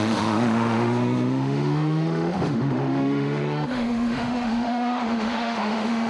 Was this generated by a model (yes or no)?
yes